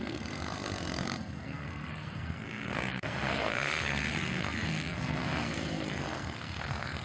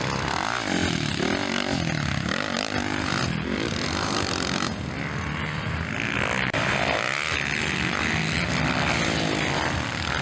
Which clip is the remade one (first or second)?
first